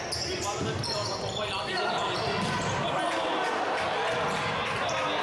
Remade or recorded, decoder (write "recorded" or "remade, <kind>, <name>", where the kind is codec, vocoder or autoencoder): recorded